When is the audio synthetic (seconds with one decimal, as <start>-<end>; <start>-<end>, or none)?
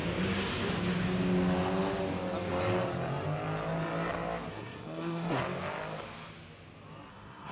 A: 4.5-5.4; 7.1-7.5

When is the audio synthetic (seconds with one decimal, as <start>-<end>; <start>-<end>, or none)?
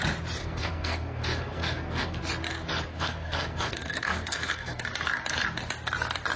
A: 0.4-2.2; 2.9-4.8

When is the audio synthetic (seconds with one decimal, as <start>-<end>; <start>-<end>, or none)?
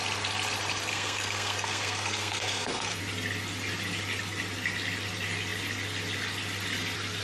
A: 0.9-3.0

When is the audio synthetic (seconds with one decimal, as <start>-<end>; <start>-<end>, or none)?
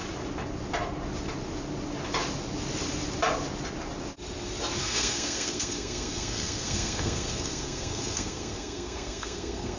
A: 4.8-9.8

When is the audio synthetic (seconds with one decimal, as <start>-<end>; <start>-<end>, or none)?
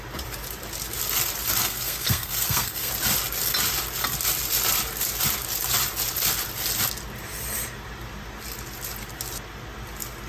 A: 1.6-2.9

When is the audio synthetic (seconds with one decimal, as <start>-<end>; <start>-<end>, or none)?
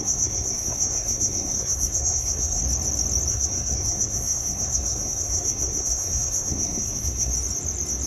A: 0.0-2.6; 3.3-7.3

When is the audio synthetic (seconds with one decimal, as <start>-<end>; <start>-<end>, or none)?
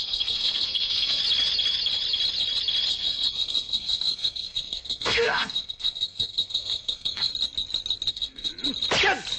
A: 0.0-1.2; 2.9-7.3; 8.1-8.5